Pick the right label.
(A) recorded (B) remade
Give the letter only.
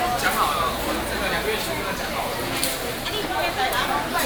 A